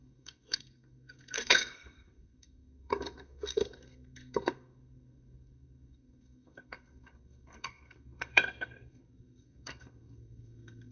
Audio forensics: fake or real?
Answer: fake